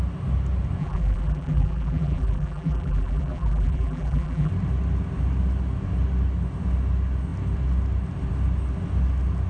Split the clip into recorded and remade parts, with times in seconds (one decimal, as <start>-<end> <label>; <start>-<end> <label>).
0.0-0.8 recorded; 0.8-4.5 remade; 4.5-9.5 recorded